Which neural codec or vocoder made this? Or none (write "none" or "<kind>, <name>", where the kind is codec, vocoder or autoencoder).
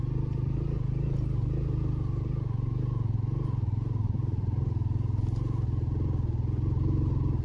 none